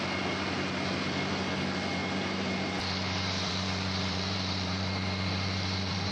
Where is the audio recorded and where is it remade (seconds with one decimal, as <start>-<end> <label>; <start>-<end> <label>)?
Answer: 0.0-2.0 recorded; 2.0-6.1 remade